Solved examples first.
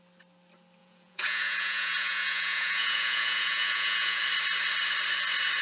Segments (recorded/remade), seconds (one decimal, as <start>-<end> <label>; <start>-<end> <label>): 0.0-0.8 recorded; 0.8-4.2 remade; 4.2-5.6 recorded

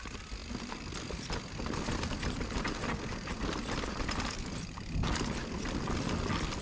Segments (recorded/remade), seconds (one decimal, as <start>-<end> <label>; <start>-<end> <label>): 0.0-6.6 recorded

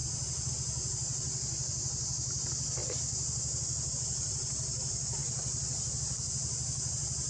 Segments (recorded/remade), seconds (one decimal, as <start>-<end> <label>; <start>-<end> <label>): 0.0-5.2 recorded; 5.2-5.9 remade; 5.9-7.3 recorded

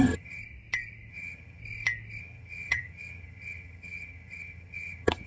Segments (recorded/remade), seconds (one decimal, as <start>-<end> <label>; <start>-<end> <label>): 0.0-0.4 remade; 0.4-1.1 recorded; 1.1-1.6 remade; 1.6-2.2 recorded; 2.2-5.3 remade